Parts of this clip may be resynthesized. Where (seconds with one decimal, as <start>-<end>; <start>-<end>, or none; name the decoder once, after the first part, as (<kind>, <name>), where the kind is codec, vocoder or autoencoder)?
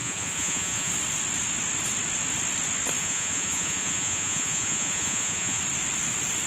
0.0-0.9 (vocoder, Vocos); 3.0-5.6